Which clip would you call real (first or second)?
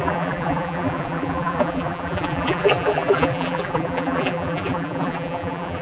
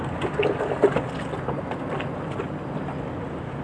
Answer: second